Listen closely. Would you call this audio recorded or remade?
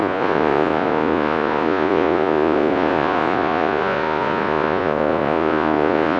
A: remade